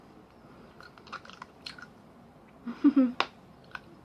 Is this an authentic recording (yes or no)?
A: yes